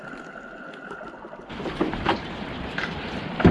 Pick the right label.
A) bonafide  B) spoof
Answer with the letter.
A